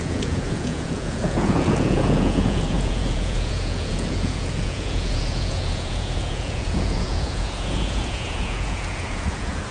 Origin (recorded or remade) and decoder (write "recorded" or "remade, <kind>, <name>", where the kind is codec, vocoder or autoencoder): remade, vocoder, Vocos